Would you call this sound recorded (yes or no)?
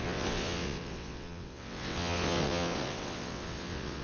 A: no